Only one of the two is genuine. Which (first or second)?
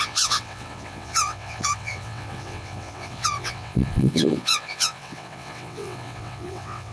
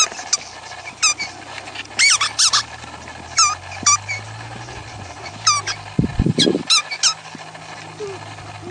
second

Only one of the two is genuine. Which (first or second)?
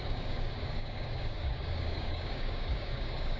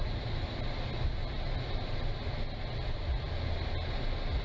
second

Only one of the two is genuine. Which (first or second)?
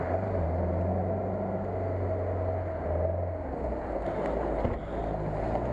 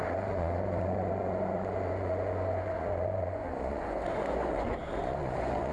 first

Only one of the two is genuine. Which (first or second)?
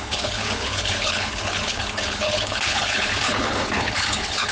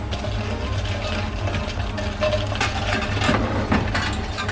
second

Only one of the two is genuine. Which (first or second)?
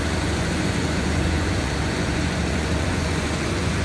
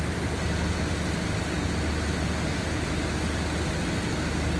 second